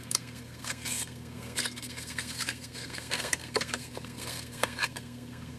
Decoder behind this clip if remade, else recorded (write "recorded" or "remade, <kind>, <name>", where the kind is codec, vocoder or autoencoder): remade, codec, SNAC